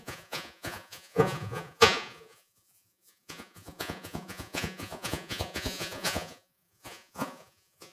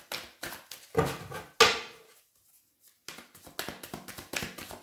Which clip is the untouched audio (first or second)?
second